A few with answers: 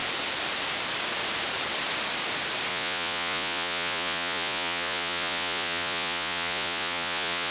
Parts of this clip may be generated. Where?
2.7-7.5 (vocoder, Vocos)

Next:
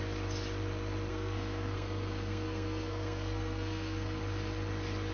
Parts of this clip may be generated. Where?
1.1-4.2 (codec, SNAC)